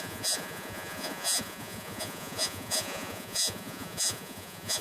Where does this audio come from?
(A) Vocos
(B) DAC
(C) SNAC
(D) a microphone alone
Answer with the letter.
A